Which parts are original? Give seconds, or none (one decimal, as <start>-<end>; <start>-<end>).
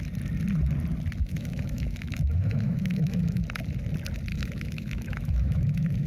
0.0-1.2; 3.4-4.3